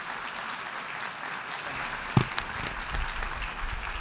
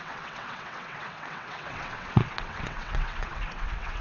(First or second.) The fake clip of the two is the second